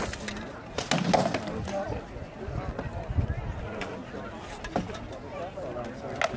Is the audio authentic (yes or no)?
yes